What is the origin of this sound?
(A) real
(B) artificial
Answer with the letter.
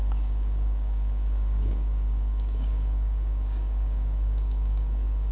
B